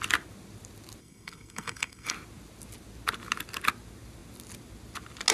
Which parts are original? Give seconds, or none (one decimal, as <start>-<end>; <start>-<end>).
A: 0.0-1.0; 2.1-5.3